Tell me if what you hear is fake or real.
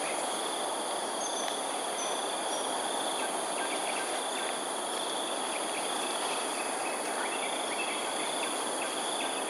real